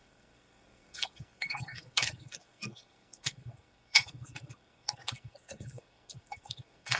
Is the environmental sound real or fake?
fake